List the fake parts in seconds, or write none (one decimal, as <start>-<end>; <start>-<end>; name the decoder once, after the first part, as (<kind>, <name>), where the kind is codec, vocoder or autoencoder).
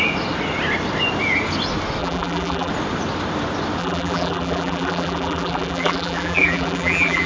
2.0-2.7 (vocoder, BigVGAN v2); 3.8-7.3